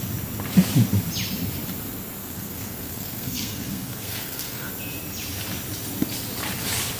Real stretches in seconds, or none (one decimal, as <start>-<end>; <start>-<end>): 0.0-2.2; 4.7-7.0